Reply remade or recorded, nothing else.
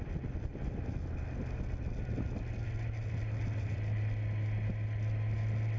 recorded